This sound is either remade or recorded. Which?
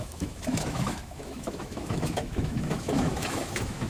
remade